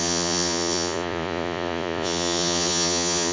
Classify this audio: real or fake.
fake